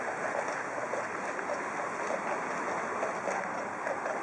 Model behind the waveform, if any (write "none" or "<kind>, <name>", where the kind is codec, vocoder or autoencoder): none